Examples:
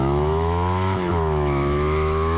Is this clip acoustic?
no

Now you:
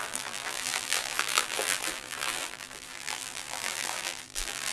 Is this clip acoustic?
no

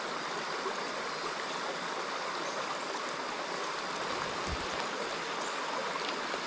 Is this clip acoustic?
yes